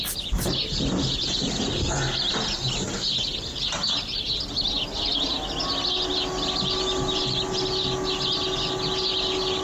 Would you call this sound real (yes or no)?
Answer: yes